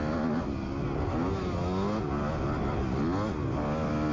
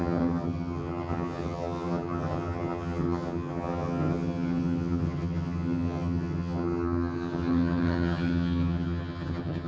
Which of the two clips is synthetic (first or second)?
second